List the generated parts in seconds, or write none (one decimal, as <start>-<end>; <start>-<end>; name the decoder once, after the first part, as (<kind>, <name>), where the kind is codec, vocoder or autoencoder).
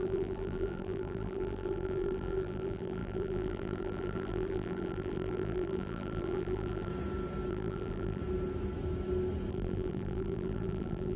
0.0-6.9 (vocoder, BigVGAN v2); 7.5-8.2; 9.5-11.2